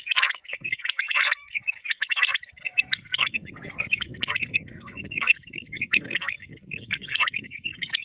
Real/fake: fake